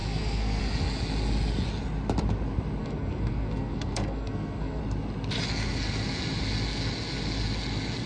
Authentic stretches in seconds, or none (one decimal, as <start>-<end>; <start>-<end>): 0.6-2.8; 4.8-8.1